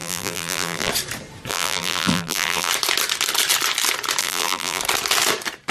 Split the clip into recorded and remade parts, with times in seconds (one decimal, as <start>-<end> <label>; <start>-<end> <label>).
0.0-0.9 remade; 0.9-1.5 recorded; 1.5-2.7 remade; 2.7-4.2 recorded; 4.2-4.8 remade; 4.8-5.7 recorded